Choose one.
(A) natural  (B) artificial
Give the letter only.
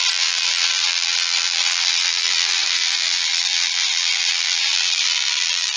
B